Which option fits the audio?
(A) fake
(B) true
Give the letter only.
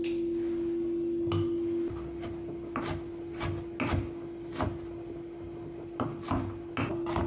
B